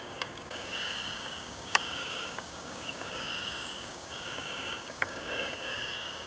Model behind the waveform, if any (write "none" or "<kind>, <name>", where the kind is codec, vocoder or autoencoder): codec, DAC